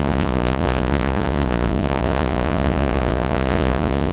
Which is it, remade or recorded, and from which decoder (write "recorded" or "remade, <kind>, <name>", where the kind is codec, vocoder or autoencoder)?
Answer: remade, vocoder, Vocos